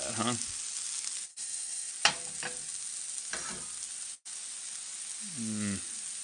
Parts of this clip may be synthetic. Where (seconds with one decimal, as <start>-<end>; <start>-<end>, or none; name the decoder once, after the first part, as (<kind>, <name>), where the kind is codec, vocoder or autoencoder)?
1.3-1.9 (codec, SNAC)